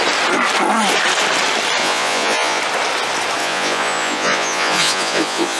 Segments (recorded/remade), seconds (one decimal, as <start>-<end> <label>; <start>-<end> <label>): 0.0-1.8 recorded; 1.8-2.6 remade; 2.6-3.4 recorded; 3.4-5.6 remade